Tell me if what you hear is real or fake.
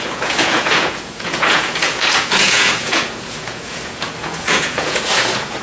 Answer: fake